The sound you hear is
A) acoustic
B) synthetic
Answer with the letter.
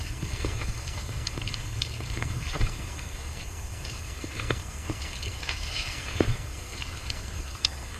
B